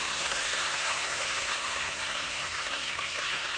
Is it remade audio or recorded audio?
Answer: remade